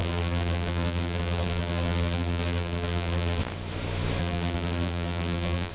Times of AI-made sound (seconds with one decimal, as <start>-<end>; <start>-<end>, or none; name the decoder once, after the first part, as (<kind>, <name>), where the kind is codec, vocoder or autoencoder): 0.0-3.4 (vocoder, BigVGAN v2); 4.2-5.7